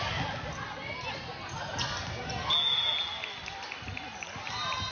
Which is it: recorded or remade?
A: recorded